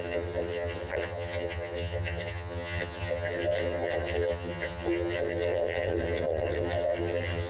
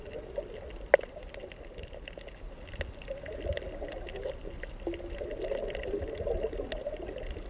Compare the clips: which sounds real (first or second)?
second